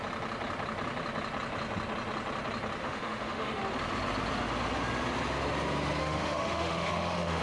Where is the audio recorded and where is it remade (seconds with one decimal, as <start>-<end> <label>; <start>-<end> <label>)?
0.0-2.8 recorded; 2.8-3.6 remade; 3.6-6.0 recorded; 6.0-7.4 remade